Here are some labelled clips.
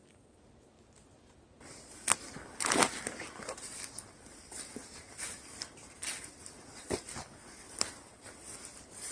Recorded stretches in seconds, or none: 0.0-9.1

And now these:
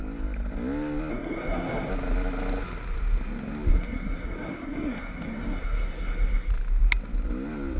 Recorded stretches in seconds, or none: 0.0-1.1; 1.9-3.7; 6.5-7.8

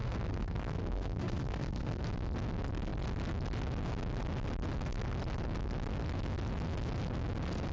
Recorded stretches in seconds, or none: 2.0-7.7